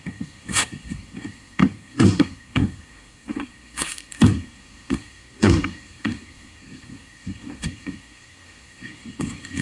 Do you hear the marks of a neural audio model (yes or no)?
yes